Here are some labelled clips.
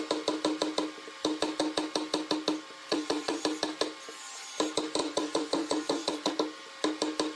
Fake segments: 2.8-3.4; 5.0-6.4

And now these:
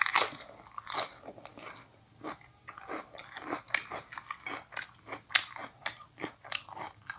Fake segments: none

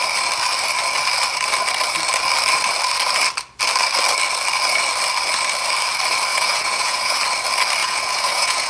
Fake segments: 6.3-7.2; 7.8-8.7

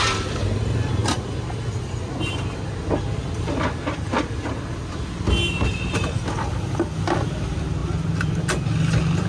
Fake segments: none